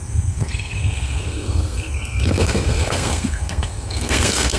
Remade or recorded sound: remade